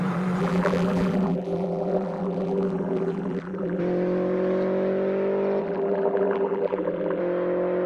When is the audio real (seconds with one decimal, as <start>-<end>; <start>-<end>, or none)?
0.0-0.4; 3.8-5.6; 7.2-7.9